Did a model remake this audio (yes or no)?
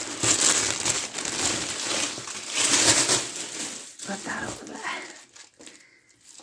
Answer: no